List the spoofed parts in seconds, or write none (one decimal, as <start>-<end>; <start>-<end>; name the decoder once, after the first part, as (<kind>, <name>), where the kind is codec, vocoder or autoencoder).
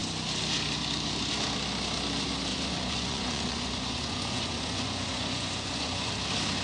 2.5-6.1 (vocoder, Vocos)